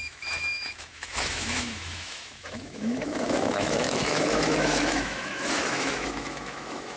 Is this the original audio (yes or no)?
no